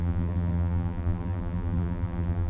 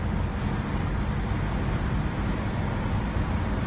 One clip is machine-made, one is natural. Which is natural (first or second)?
second